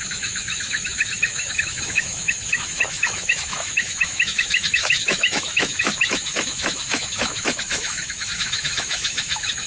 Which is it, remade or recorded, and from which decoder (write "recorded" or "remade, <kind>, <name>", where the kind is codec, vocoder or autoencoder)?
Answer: remade, autoencoder, DAC-VAE